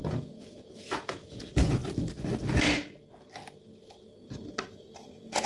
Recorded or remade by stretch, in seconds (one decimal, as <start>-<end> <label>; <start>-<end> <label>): 0.0-1.8 remade; 1.8-5.1 recorded; 5.1-5.5 remade